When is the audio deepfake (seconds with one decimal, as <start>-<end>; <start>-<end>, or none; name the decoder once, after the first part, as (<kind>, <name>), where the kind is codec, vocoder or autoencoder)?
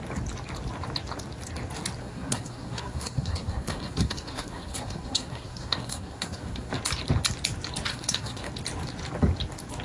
2.0-6.7 (codec, SNAC); 7.9-8.5